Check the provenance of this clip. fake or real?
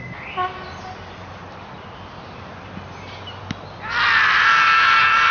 real